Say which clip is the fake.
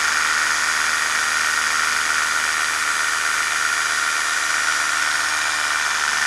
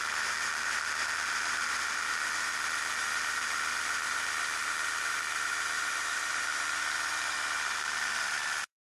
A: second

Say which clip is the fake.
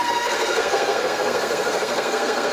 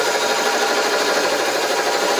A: first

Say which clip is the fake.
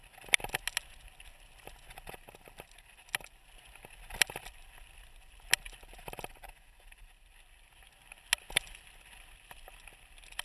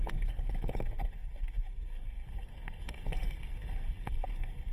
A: second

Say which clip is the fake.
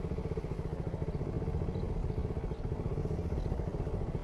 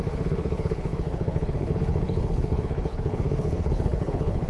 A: second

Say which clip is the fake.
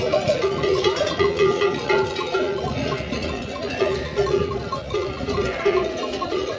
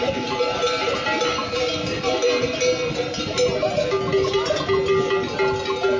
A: first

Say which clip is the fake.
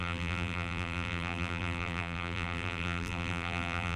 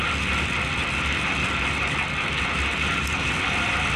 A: first